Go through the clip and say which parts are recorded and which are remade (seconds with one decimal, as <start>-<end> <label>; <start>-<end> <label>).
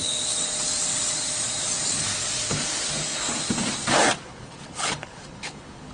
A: 0.0-4.3 recorded; 4.3-5.9 remade